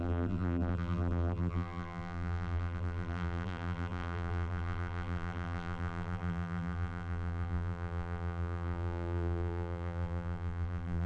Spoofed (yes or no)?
yes